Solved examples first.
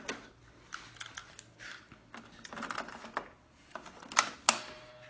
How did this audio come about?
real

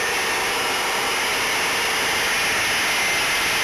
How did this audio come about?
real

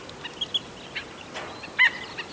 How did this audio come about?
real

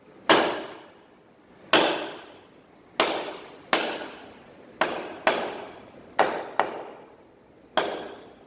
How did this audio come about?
real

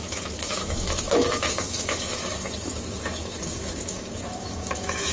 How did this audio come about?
fake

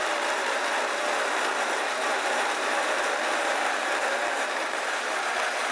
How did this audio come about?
fake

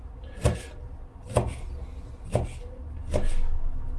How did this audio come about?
real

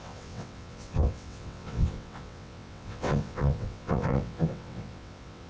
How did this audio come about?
fake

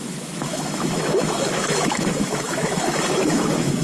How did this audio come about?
fake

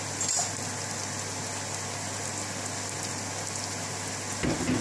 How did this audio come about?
real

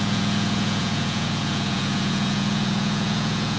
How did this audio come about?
fake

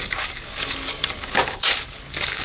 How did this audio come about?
fake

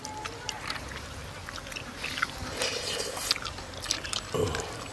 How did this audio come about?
real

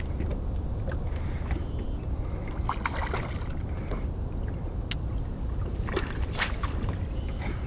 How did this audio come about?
real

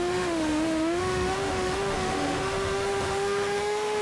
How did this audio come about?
fake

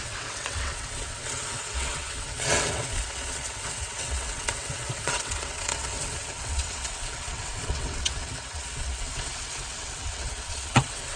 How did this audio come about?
fake